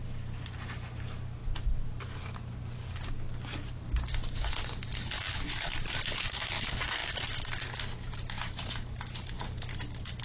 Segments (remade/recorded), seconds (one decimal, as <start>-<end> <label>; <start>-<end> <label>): 0.0-10.2 recorded